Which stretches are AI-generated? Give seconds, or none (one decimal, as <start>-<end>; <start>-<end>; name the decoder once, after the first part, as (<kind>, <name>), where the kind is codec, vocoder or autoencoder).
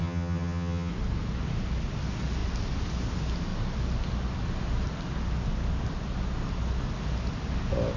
0.0-0.9 (vocoder, HiFi-GAN)